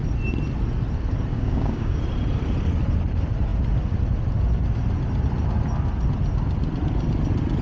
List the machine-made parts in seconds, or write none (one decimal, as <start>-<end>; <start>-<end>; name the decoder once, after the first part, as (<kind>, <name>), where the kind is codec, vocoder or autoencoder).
1.3-2.0 (codec, DAC)